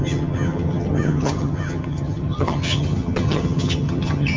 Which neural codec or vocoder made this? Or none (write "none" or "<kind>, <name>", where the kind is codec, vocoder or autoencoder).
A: vocoder, HiFi-GAN